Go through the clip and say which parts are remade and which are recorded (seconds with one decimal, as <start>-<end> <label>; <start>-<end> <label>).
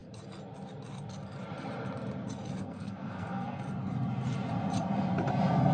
0.0-2.6 recorded; 2.6-3.6 remade; 3.6-5.7 recorded